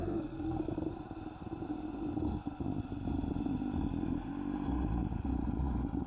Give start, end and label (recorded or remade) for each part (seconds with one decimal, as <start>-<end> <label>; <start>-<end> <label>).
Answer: 0.0-0.9 remade; 0.9-6.1 recorded